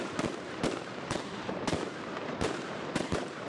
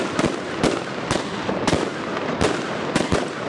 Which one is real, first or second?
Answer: second